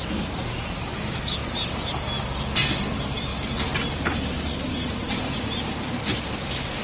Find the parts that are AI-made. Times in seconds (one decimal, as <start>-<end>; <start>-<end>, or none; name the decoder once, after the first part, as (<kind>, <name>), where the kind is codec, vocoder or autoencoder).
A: none